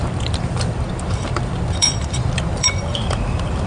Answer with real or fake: fake